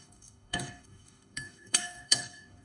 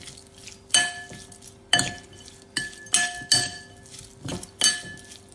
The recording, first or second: second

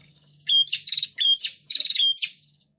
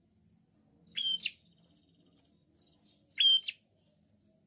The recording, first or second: second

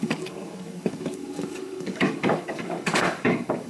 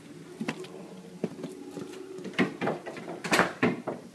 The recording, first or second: second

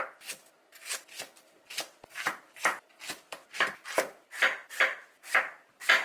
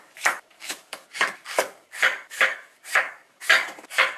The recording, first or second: first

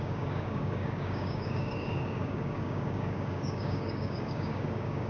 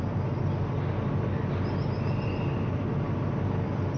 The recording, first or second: second